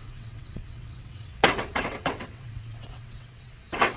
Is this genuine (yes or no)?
no